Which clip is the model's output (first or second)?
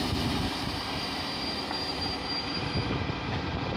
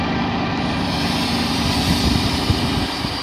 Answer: first